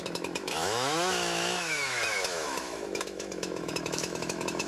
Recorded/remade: remade